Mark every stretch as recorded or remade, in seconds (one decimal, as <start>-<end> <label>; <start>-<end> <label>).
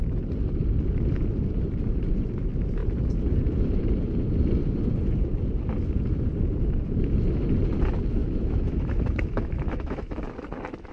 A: 0.0-8.2 recorded; 8.2-10.2 remade; 10.2-10.9 recorded